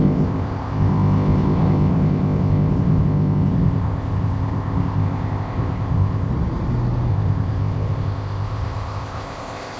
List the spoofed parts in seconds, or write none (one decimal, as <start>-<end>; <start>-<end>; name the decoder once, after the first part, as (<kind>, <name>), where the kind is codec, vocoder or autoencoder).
0.0-6.3 (codec, ZipCodec); 7.1-9.8